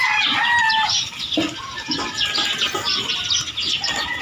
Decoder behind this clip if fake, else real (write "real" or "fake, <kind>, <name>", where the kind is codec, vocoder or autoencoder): real